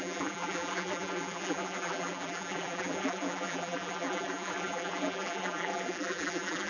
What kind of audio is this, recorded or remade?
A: remade